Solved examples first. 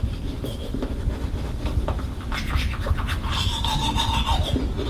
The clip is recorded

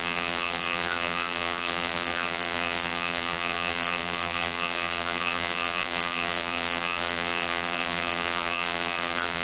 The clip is remade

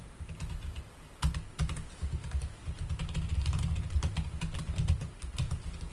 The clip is recorded